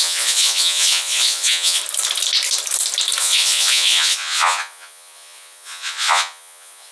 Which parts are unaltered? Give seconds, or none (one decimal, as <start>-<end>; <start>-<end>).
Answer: 1.8-3.2